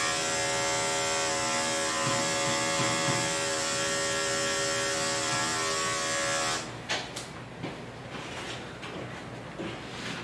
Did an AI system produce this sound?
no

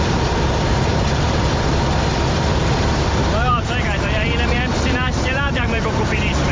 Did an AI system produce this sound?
yes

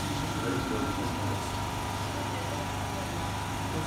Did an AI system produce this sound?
no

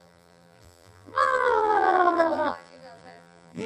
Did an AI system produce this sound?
yes